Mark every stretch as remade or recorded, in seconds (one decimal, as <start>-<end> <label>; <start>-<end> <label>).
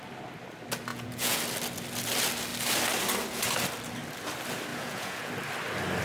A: 0.0-0.9 recorded; 0.9-1.4 remade; 1.4-4.7 recorded; 4.7-5.3 remade; 5.3-6.0 recorded